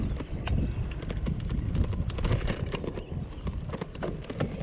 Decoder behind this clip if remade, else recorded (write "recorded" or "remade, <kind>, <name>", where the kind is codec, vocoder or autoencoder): recorded